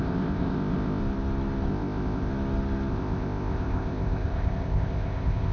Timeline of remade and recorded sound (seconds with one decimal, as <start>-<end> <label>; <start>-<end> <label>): 0.0-1.0 remade; 1.0-1.7 recorded; 1.7-2.3 remade; 2.3-2.9 recorded; 2.9-5.5 remade